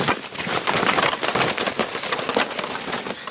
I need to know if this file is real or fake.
real